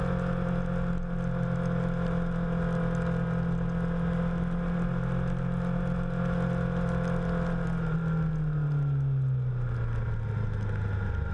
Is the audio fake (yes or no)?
no